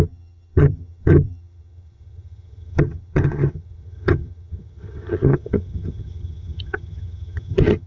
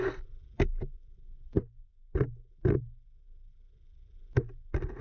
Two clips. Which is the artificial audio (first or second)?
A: first